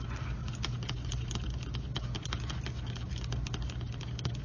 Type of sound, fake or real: real